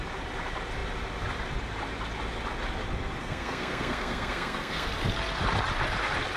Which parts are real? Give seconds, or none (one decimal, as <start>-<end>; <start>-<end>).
0.0-3.2; 4.9-6.4